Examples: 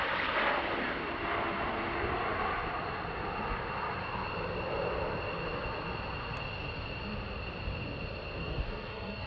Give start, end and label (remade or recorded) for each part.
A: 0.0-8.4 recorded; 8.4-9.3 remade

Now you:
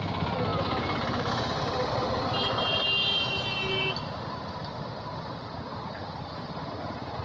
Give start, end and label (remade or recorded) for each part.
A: 0.0-7.2 recorded

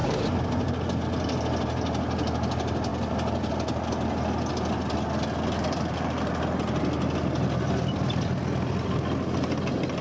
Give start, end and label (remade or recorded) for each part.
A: 0.0-0.7 remade; 0.7-10.0 recorded

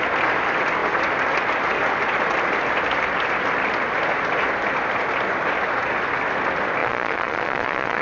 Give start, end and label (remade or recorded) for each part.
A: 0.0-6.8 recorded; 6.8-8.0 remade